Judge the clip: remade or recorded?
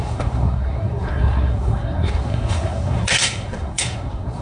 remade